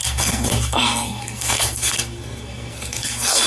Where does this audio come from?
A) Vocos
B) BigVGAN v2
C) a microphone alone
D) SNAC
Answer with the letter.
D